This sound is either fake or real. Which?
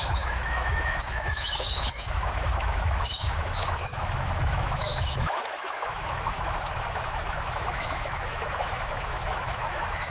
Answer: fake